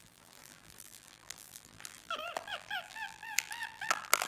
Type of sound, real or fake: fake